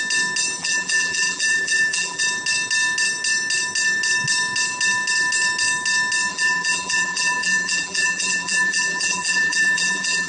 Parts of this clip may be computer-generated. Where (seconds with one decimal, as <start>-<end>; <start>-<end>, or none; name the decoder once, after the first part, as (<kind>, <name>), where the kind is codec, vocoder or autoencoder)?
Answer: 0.6-2.2 (vocoder, BigVGAN v2); 6.3-10.3